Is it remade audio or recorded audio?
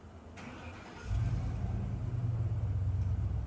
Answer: recorded